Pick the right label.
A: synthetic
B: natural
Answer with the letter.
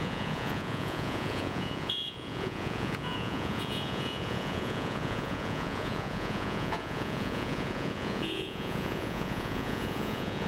A